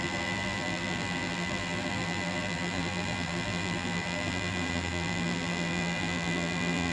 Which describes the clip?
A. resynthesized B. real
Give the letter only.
A